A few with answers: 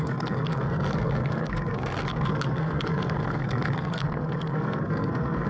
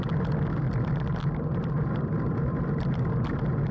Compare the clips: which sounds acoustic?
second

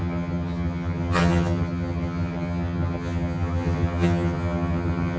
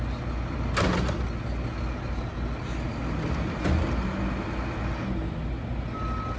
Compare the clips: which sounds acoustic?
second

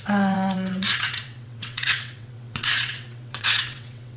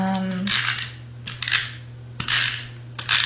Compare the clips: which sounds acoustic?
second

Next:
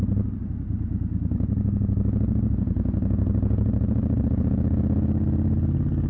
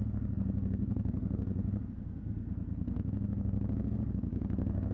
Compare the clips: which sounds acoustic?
first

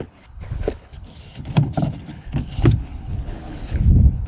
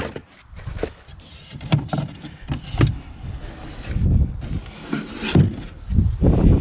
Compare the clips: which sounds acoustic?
second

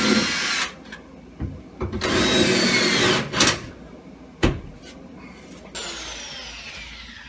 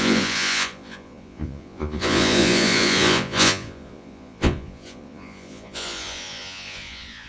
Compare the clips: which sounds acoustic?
first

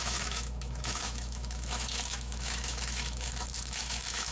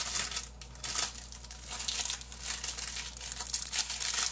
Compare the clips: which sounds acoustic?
second